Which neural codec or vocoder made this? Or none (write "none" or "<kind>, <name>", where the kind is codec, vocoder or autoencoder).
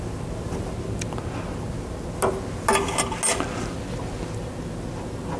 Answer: none